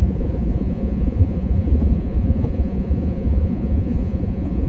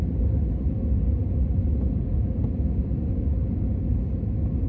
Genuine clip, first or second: second